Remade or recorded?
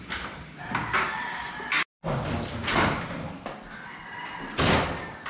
recorded